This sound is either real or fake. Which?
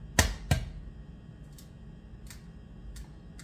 real